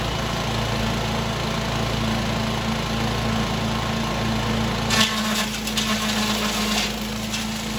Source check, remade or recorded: recorded